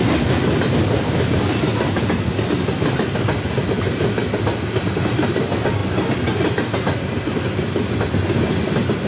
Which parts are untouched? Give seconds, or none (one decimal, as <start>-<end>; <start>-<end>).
0.0-9.1

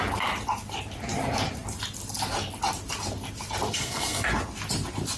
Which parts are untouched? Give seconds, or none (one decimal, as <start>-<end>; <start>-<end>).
0.0-3.7; 4.2-5.2

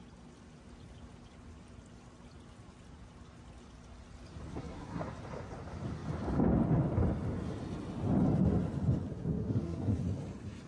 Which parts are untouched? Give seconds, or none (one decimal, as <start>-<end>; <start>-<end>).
0.0-4.5; 5.0-9.1; 10.0-10.7

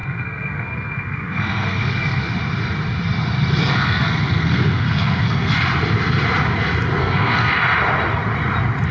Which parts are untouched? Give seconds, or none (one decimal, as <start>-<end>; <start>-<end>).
2.3-3.6; 5.5-7.0; 7.6-8.9